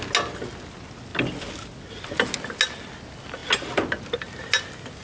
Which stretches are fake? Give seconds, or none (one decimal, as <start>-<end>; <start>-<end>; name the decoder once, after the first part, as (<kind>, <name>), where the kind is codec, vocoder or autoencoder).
none